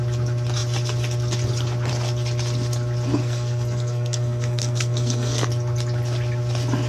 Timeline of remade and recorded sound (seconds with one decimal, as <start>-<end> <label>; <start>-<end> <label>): 0.0-3.2 recorded; 3.2-5.5 remade; 5.5-6.9 recorded